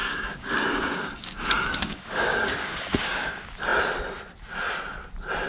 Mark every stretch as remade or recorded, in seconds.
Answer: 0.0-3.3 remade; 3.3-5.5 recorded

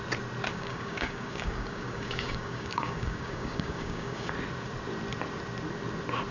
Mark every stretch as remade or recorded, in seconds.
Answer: 0.0-0.5 recorded; 0.5-4.3 remade; 4.3-6.3 recorded

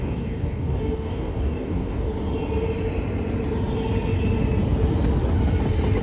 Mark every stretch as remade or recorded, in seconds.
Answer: 0.0-2.1 remade; 2.1-6.0 recorded

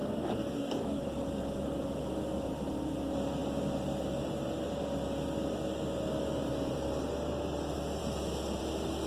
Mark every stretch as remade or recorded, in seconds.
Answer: 0.0-1.0 remade; 1.0-9.1 recorded

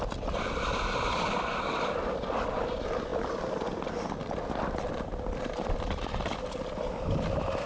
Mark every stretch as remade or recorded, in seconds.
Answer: 0.0-7.7 recorded

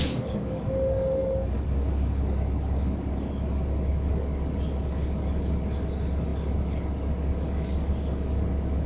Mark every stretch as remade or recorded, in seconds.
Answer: 0.0-8.9 remade

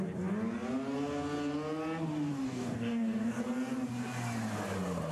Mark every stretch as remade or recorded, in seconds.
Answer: 0.0-2.3 recorded; 2.3-3.4 remade; 3.4-5.1 recorded

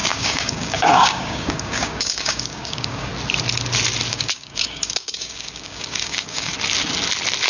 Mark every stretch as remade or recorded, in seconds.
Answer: 0.0-3.1 remade; 3.1-4.1 recorded; 4.1-6.5 remade; 6.5-7.5 recorded